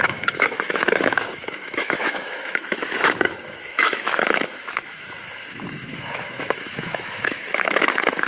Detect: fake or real fake